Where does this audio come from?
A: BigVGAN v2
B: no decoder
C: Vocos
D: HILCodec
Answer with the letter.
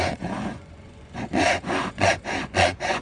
C